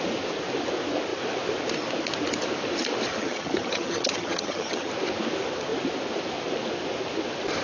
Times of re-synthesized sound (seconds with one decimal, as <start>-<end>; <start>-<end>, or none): 3.1-4.9